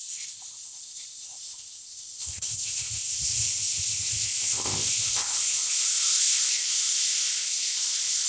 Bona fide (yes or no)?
no